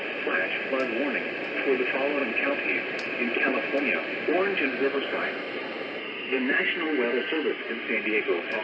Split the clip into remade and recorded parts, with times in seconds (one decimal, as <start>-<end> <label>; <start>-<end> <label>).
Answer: 0.0-2.2 recorded; 2.2-3.8 remade; 3.8-4.8 recorded; 4.8-6.6 remade; 6.6-7.2 recorded; 7.2-8.6 remade